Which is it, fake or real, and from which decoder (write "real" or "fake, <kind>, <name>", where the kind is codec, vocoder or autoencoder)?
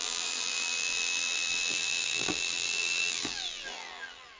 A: fake, vocoder, BigVGAN v2